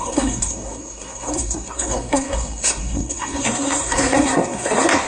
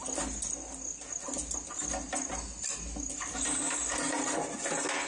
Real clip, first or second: second